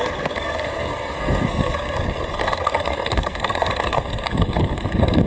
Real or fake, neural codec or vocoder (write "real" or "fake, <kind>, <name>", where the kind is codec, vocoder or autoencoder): fake, codec, SNAC